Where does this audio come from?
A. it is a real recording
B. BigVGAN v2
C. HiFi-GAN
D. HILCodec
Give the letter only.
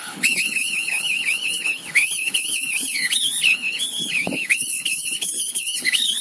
D